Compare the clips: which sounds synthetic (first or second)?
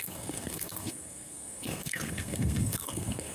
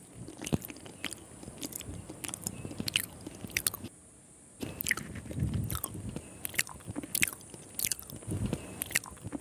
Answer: first